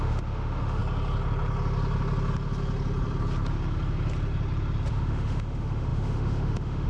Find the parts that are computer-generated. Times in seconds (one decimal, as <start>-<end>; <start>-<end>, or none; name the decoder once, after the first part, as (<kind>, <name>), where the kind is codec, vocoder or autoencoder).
0.0-0.8 (autoencoder, DAC-VAE); 4.9-6.9